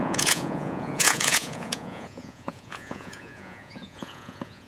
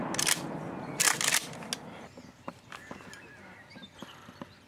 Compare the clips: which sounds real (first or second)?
second